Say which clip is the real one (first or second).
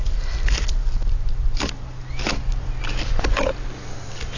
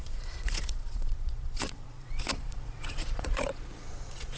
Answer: first